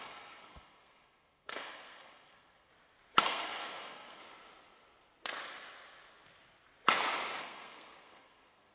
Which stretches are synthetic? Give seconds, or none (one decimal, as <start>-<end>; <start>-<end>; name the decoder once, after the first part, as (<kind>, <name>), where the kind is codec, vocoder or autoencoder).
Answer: 0.0-2.7 (codec, SNAC); 3.2-4.2; 7.4-8.7